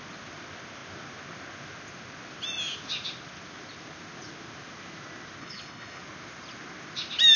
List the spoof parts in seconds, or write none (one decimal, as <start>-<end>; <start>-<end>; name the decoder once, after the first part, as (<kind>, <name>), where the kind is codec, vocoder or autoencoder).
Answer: 5.4-6.0 (codec, HILCodec)